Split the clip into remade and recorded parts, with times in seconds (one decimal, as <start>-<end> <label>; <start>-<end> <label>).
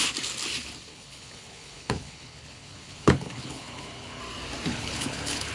0.0-0.9 recorded; 0.9-4.2 remade; 4.2-4.7 recorded; 4.7-5.5 remade